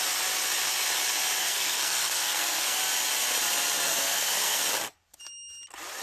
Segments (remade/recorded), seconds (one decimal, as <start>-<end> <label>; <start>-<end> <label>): 0.0-1.4 recorded; 1.4-2.8 remade; 2.8-3.9 recorded; 3.9-4.6 remade; 4.6-6.0 recorded